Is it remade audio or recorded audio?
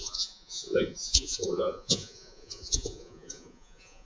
remade